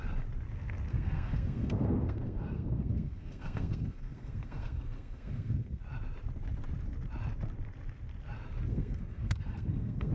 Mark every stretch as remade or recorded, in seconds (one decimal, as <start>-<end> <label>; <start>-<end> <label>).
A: 0.0-0.9 recorded; 0.9-5.8 remade; 5.8-8.7 recorded; 8.7-10.1 remade